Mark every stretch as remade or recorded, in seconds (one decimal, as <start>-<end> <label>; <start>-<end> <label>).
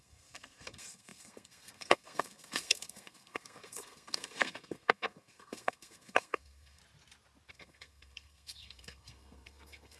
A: 0.0-6.8 remade; 6.8-7.5 recorded; 7.5-10.0 remade